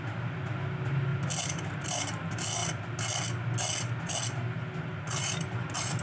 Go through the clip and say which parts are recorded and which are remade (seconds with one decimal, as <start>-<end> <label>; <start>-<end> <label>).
0.0-6.0 recorded